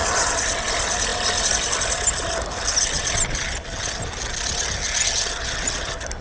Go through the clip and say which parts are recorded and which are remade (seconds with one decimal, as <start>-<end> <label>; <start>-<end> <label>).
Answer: 0.0-6.2 recorded